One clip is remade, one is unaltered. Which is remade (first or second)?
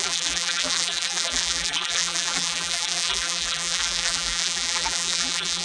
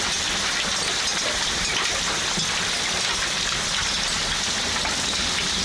first